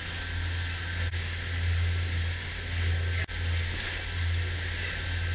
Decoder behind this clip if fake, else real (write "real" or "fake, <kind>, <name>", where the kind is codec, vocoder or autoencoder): real